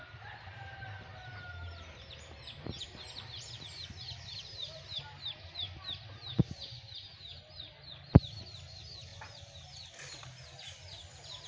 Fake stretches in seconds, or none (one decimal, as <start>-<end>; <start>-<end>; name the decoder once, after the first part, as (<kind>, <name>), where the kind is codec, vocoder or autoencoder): none